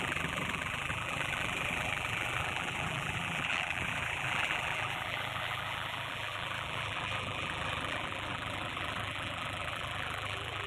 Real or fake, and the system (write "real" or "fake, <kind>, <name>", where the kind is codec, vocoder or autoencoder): fake, vocoder, BigVGAN v2